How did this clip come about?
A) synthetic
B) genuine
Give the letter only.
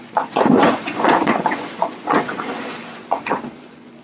A